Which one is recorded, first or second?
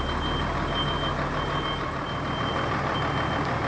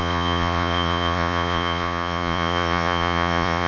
first